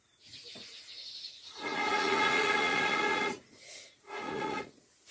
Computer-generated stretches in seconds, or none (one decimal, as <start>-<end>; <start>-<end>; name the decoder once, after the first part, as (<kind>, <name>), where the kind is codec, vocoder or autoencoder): 0.0-5.1 (vocoder, Vocos)